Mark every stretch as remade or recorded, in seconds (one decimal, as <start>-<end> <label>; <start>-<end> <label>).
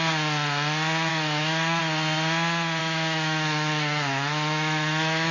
0.0-1.1 recorded; 1.1-1.8 remade; 1.8-2.8 recorded; 2.8-5.3 remade